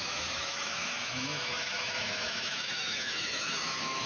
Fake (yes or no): yes